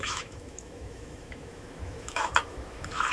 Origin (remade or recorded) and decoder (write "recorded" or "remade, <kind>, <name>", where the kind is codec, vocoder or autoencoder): remade, autoencoder, DAC-VAE